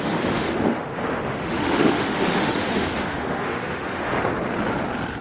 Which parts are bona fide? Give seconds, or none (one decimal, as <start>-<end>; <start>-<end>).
4.1-5.2